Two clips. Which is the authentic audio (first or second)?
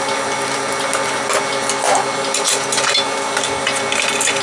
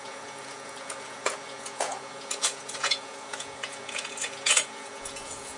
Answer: first